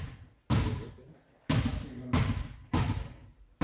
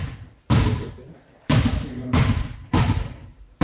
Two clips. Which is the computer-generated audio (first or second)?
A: second